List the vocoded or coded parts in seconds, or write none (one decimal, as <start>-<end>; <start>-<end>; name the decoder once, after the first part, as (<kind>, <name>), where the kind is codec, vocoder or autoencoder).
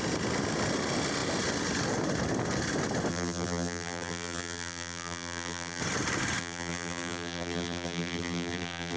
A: 3.1-5.8 (vocoder, BigVGAN v2); 6.4-9.0